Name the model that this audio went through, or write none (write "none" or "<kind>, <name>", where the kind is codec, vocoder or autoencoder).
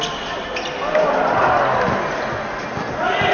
none